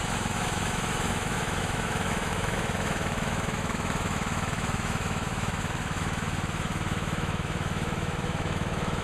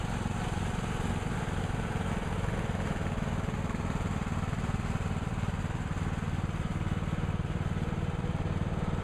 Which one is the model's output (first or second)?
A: first